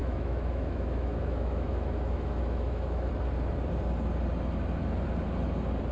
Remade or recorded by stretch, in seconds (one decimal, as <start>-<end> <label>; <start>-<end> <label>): 0.0-3.1 remade; 3.1-5.9 recorded